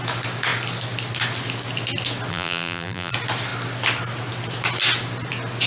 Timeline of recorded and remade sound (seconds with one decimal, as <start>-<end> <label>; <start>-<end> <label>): 0.0-2.3 recorded; 2.3-3.1 remade; 3.1-5.7 recorded